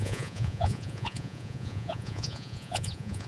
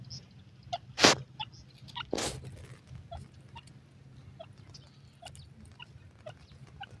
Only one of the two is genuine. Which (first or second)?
second